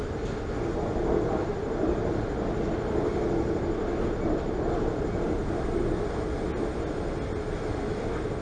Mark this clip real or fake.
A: real